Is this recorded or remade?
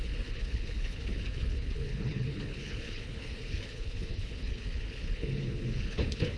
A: remade